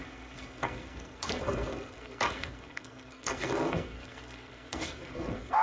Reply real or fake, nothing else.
fake